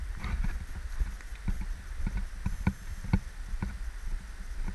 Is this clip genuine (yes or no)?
yes